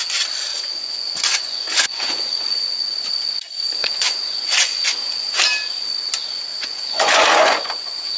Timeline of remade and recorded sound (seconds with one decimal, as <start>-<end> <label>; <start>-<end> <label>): 0.0-0.5 recorded; 0.5-2.3 remade; 2.3-3.8 recorded; 3.8-5.4 remade; 5.4-6.5 recorded; 6.5-8.2 remade